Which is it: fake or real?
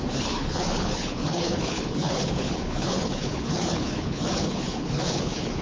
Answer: fake